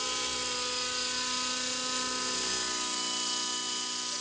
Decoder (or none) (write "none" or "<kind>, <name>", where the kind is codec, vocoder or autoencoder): none